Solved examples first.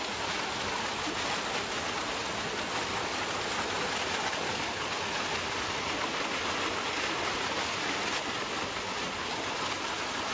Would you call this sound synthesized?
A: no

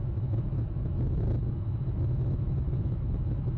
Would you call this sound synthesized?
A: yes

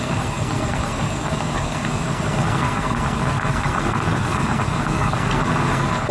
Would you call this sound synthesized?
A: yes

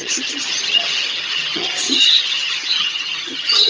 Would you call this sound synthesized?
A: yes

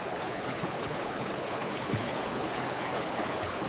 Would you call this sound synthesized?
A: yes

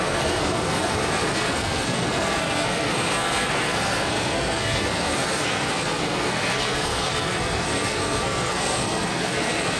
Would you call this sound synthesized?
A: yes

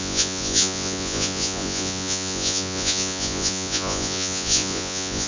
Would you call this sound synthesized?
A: yes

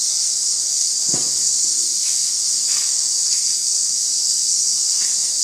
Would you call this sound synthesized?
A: yes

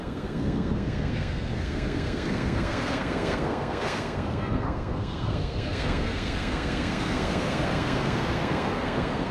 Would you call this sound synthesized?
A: yes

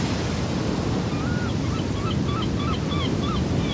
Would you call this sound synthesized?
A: no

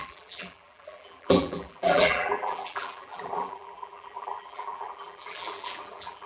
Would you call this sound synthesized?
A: yes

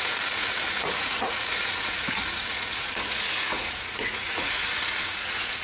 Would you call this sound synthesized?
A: yes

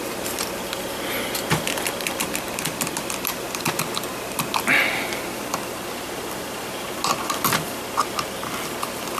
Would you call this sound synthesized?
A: no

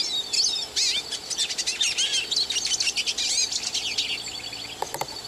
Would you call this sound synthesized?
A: no